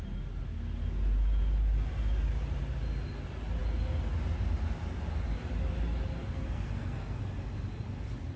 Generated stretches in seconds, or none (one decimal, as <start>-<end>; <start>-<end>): 6.2-7.2